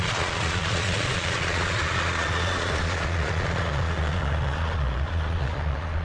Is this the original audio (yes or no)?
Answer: no